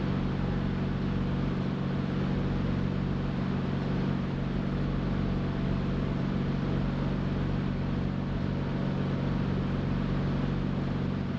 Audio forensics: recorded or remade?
recorded